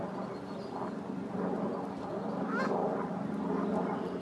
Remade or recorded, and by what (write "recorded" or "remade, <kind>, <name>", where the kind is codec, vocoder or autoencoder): recorded